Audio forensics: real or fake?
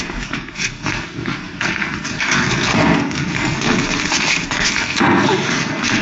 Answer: fake